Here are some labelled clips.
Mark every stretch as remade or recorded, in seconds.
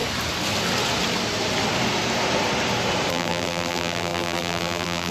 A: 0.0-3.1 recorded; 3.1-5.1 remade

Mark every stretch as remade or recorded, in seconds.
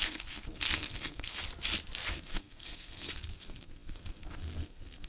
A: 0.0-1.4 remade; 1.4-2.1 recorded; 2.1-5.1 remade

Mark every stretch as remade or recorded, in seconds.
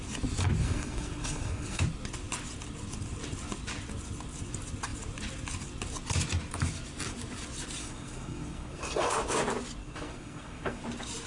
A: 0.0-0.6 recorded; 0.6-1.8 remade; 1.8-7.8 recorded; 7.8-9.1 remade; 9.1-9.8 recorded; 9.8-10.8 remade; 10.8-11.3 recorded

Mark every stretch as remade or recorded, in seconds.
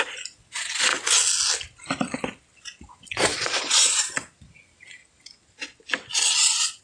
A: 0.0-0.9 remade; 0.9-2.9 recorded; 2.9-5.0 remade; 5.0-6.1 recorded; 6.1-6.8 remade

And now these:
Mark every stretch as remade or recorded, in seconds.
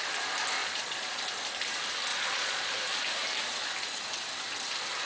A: 0.0-0.6 recorded; 0.6-1.2 remade; 1.2-2.1 recorded; 2.1-2.8 remade; 2.8-5.1 recorded